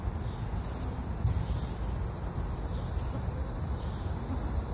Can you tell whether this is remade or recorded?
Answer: recorded